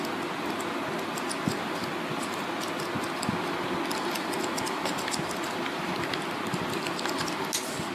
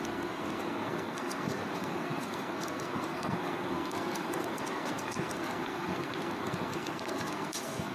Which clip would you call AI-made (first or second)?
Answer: second